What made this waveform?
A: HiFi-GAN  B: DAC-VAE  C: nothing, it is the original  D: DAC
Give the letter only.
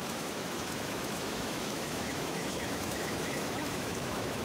B